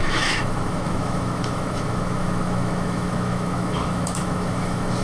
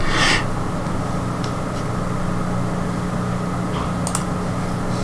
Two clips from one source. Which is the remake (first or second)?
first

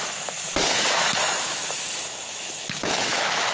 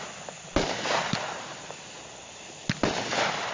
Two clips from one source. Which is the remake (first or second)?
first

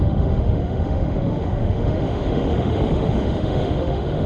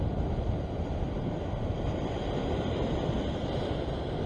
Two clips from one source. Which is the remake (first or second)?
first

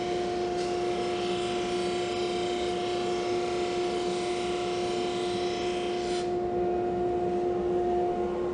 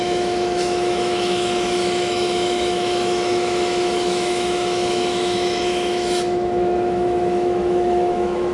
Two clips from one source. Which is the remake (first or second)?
second